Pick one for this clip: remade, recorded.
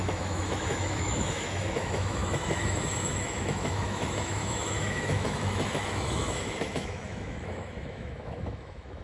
remade